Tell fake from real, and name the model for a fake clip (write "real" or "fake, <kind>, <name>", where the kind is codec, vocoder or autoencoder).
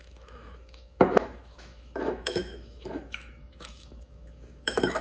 fake, autoencoder, DAC-VAE